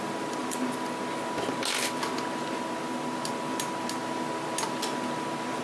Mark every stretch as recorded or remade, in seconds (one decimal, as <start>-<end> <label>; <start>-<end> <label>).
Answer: 0.0-5.6 recorded